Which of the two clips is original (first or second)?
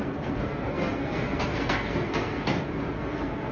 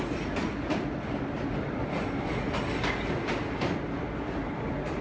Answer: second